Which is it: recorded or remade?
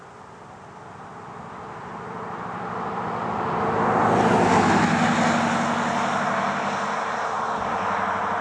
recorded